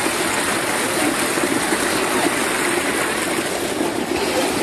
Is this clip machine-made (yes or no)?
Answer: no